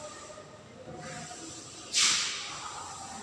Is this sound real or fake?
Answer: real